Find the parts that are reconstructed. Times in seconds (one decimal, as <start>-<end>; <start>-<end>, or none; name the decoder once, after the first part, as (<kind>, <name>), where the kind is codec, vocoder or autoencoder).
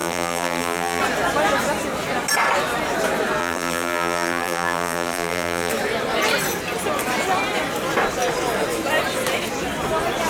0.0-1.0 (vocoder, BigVGAN v2); 3.4-5.7